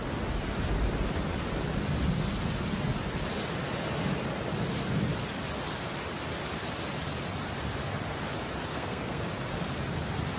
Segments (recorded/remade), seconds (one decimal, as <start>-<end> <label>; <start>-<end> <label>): 0.0-8.7 recorded; 8.7-9.2 remade; 9.2-10.4 recorded